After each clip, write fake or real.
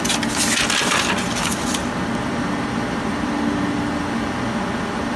real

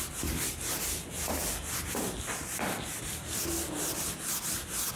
real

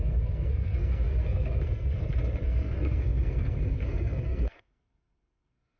fake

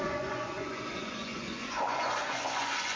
fake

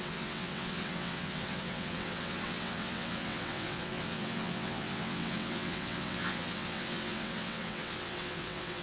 fake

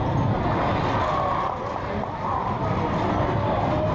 real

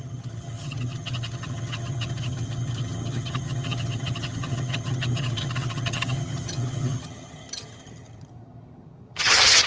fake